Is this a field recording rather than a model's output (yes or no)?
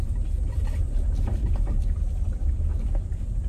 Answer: yes